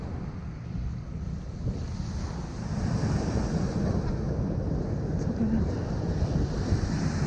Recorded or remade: recorded